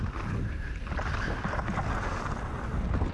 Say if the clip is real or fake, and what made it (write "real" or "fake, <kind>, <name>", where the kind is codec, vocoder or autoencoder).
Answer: real